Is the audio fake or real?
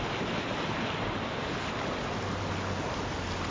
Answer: real